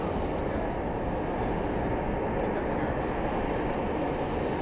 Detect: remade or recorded recorded